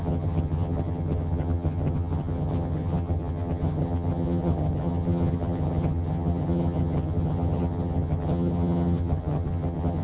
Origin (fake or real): fake